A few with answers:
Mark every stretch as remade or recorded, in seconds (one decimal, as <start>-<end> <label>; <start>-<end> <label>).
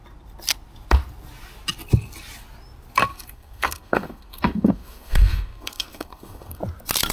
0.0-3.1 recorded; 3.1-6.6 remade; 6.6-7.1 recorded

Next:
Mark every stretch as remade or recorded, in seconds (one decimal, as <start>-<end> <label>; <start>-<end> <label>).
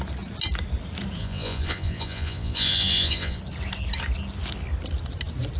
0.0-1.2 recorded; 1.2-3.4 remade; 3.4-5.6 recorded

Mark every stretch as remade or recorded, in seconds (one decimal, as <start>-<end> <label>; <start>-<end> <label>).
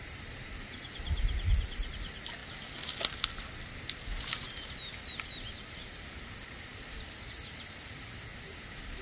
0.0-9.0 recorded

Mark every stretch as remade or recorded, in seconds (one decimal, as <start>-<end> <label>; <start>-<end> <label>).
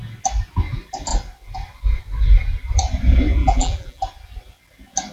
0.0-3.4 recorded; 3.4-4.0 remade; 4.0-5.1 recorded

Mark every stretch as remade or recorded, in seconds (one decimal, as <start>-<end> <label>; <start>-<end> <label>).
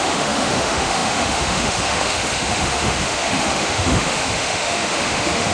0.0-5.5 remade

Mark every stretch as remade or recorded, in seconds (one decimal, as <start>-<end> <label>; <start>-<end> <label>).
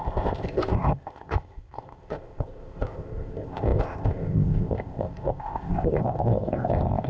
0.0-7.1 remade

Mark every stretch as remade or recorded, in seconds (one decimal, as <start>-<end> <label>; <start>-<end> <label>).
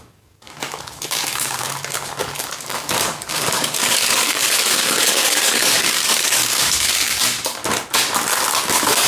0.0-7.6 remade; 7.6-8.6 recorded; 8.6-9.1 remade